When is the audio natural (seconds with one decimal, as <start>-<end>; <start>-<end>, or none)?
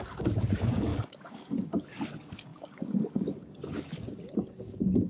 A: none